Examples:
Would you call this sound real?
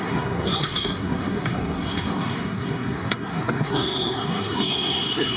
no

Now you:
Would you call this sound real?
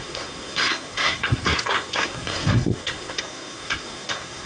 no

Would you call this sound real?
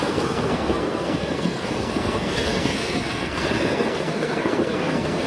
no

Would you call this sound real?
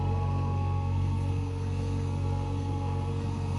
no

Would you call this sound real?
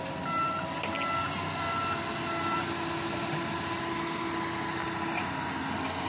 yes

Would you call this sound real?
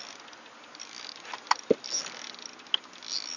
yes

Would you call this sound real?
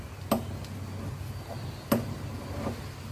yes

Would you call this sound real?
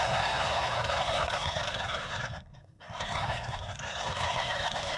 no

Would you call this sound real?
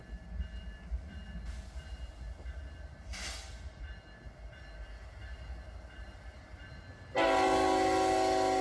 yes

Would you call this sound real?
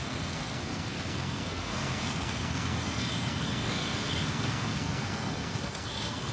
no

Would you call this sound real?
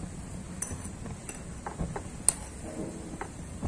yes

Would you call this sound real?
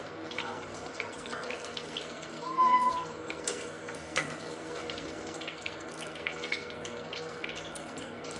no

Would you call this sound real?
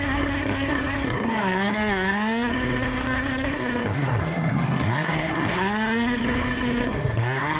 no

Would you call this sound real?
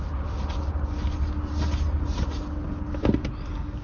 yes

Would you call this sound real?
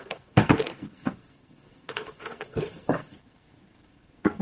no